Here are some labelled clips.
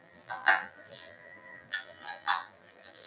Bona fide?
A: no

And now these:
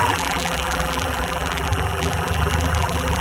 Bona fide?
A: no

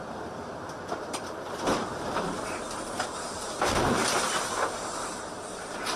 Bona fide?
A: no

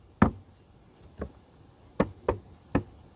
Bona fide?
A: yes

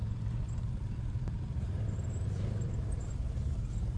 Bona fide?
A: no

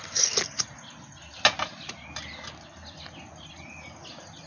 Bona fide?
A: yes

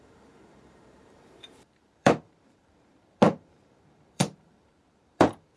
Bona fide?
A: no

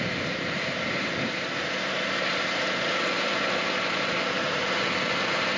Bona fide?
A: no